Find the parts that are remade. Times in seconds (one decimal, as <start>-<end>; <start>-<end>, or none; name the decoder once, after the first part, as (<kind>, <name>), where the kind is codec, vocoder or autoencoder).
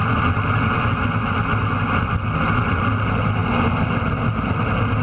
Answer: none